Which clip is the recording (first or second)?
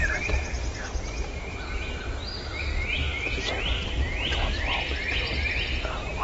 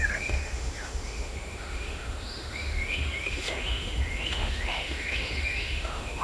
first